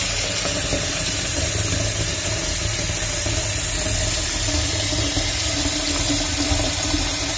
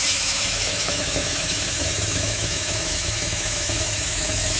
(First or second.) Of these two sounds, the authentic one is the first